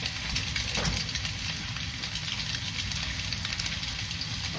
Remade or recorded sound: recorded